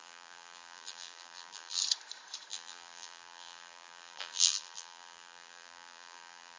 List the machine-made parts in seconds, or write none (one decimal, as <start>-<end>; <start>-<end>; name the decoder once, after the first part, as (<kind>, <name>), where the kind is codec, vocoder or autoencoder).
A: 0.0-1.8 (vocoder, BigVGAN v2); 2.5-6.6